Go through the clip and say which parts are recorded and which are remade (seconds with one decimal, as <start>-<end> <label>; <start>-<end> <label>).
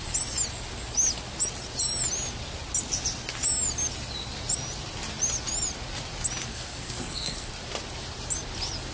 0.0-6.5 recorded; 6.5-7.5 remade; 7.5-8.9 recorded